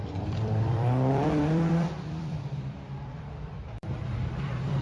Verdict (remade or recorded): remade